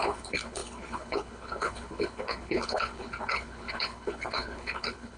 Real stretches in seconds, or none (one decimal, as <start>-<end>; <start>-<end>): none